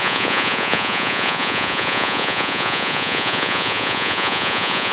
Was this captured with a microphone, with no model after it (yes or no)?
no